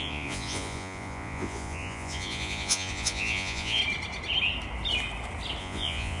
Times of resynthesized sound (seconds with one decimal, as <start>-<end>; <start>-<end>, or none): 0.0-3.8; 5.6-6.2